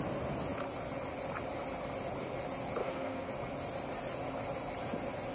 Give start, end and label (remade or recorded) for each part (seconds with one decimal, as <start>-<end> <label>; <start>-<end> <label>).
0.0-2.8 recorded; 2.8-3.3 remade; 3.3-5.3 recorded